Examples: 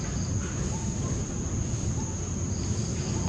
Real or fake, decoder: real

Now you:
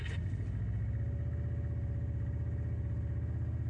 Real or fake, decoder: real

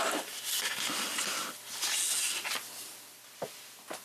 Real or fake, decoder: real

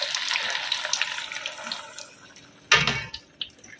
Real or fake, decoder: real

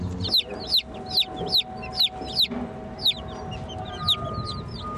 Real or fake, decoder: real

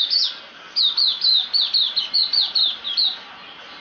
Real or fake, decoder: real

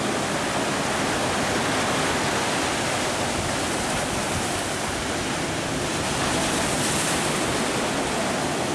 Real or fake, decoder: real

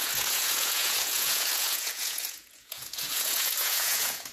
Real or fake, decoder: fake, vocoder, Vocos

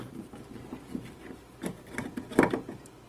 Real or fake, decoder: real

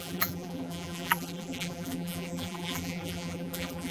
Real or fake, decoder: fake, vocoder, BigVGAN v2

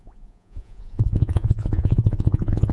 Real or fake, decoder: fake, vocoder, Vocos